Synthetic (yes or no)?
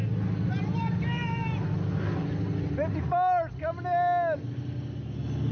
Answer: no